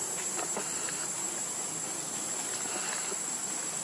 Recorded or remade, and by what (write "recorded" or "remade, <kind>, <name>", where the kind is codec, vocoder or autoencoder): recorded